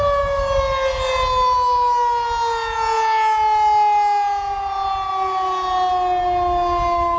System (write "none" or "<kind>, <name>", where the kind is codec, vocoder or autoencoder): none